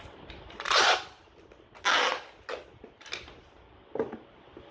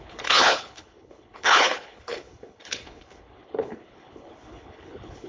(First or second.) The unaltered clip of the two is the first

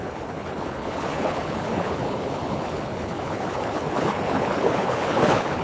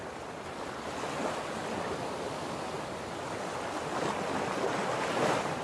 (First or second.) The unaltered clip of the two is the second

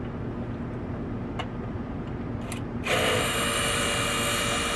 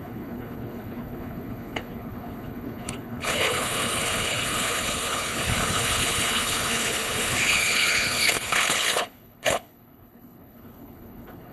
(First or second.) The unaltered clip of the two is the first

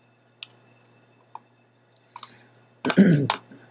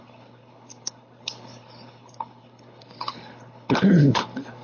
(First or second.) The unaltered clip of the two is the first